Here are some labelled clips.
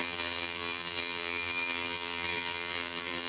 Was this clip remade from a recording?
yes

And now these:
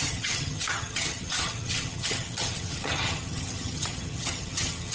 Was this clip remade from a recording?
yes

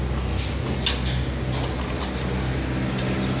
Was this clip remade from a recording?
no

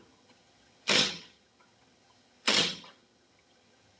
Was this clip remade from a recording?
yes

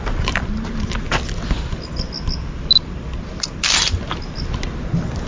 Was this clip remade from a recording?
no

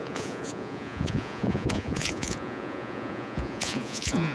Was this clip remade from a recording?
yes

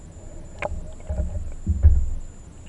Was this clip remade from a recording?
no